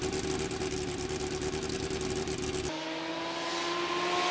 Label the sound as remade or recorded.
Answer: recorded